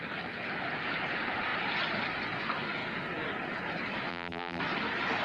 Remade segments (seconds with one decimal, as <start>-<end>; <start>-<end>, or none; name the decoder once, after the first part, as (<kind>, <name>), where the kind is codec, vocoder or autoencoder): 4.1-4.6 (vocoder, BigVGAN v2)